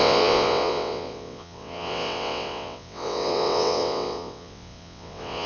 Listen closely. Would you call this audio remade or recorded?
remade